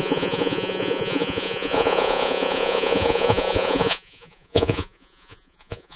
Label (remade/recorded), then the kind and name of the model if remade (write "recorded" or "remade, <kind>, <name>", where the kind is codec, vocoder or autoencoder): remade, vocoder, Vocos